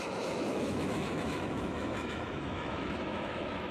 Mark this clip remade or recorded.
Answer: remade